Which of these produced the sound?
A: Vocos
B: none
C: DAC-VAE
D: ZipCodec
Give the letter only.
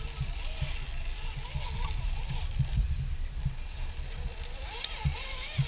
B